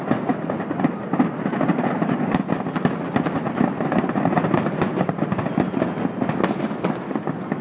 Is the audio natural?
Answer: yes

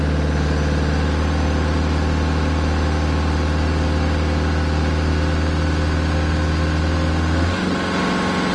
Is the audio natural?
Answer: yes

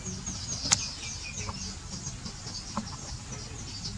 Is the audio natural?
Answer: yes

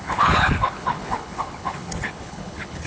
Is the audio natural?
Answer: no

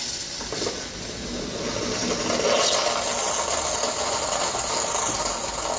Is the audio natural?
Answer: yes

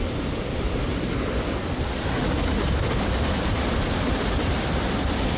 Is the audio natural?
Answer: yes